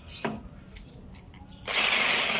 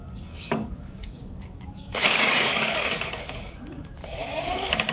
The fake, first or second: second